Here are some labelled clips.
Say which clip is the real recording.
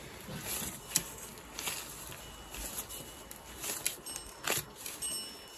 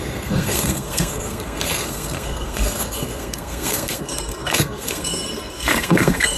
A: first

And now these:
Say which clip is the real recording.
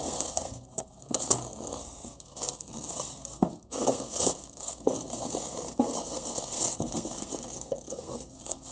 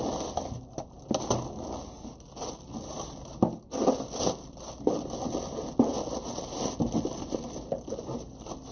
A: second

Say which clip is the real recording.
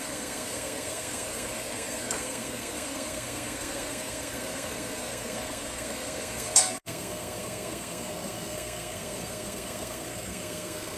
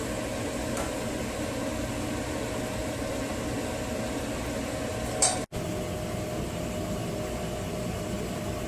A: second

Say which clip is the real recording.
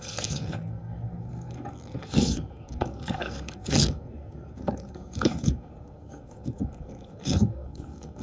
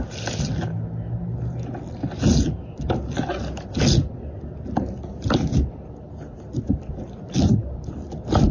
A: second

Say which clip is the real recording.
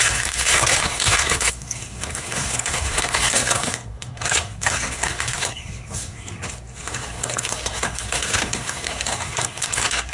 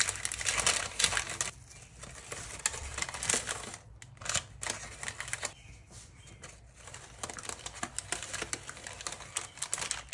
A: second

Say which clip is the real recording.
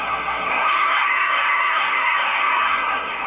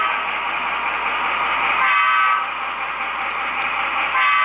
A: second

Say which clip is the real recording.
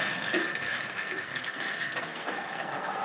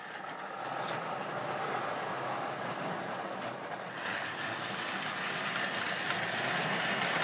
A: second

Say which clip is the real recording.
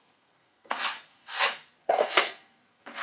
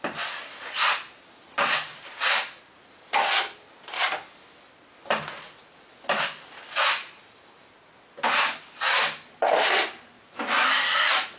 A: second